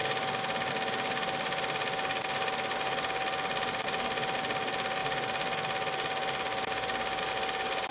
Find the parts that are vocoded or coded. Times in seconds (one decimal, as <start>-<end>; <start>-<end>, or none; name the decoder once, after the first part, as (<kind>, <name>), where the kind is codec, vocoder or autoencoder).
none